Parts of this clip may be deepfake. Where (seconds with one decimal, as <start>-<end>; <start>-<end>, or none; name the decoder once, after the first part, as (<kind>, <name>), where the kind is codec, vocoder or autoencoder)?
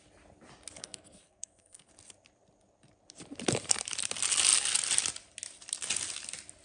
0.8-1.9 (codec, SNAC)